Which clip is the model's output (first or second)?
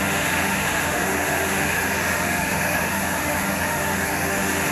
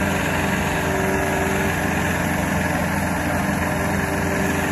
first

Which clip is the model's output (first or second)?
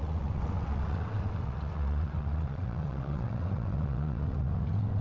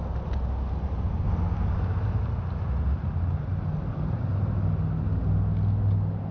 first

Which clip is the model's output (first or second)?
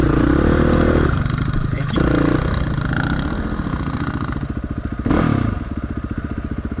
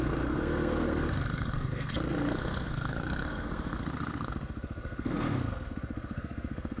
second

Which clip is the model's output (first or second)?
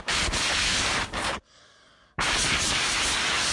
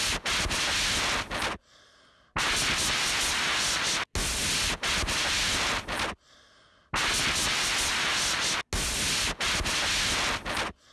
first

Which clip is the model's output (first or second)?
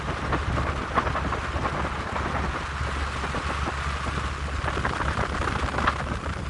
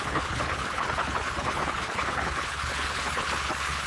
second